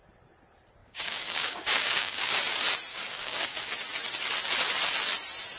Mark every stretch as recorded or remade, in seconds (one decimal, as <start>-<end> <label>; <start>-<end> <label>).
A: 0.0-0.8 recorded; 0.8-2.4 remade; 2.4-2.9 recorded; 2.9-3.7 remade; 3.7-5.6 recorded